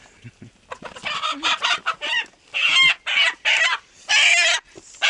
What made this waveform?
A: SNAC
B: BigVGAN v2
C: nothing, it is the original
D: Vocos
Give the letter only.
C